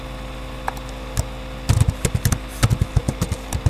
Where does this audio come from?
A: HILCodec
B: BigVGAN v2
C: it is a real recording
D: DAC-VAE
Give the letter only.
C